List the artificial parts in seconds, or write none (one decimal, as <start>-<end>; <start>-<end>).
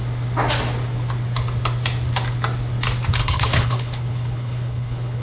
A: 3.1-5.2